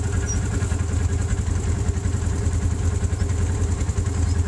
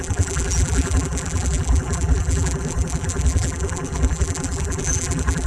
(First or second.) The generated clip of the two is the second